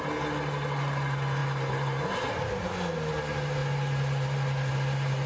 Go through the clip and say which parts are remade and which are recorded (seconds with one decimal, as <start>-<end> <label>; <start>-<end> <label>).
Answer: 0.0-5.3 recorded